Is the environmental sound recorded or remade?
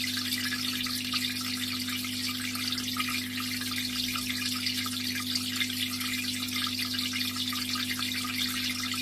recorded